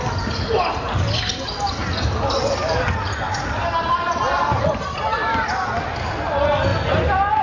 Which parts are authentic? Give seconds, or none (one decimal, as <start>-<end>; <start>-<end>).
0.0-7.4